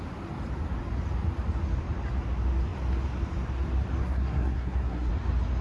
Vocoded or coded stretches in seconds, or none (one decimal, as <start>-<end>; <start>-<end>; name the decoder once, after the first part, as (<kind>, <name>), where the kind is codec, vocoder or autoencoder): 4.0-5.1 (codec, SNAC)